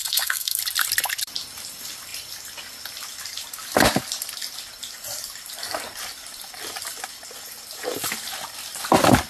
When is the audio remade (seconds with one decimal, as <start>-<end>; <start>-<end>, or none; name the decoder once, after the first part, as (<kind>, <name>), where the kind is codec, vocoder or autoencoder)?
0.0-0.6 (codec, SNAC)